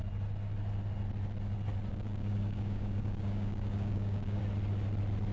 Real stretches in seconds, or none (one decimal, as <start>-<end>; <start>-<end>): 0.0-1.9; 4.4-5.3